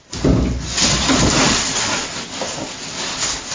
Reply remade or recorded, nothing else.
recorded